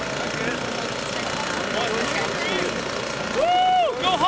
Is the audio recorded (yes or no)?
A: yes